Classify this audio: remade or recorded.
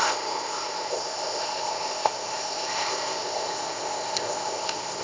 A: remade